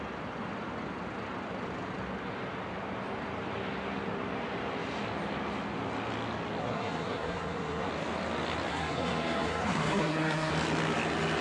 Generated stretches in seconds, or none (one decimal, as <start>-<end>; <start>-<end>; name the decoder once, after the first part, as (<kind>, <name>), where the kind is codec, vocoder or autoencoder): 6.6-7.9 (codec, SNAC); 8.7-10.5